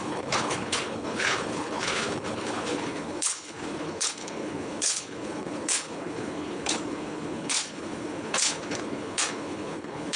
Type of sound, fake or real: fake